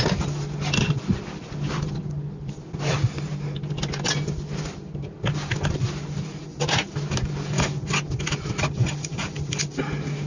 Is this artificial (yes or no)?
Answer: no